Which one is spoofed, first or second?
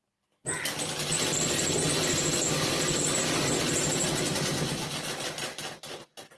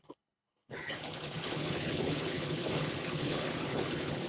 second